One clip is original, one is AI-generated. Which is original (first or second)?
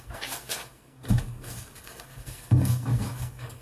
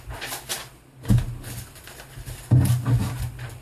second